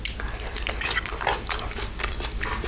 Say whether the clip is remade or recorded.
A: recorded